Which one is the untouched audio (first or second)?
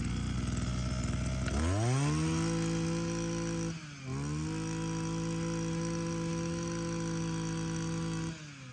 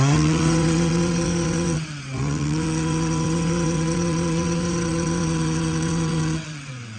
first